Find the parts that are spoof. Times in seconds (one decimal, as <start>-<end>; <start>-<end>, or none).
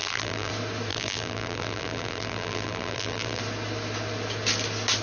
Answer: 0.0-0.5; 0.9-3.4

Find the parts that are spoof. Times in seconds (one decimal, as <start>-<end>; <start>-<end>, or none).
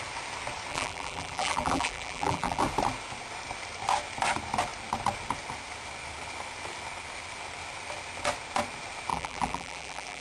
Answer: 0.7-2.6; 9.1-10.2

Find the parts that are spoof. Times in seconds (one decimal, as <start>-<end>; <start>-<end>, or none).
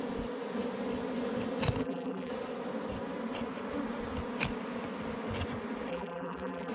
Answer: 1.8-2.3; 5.9-6.7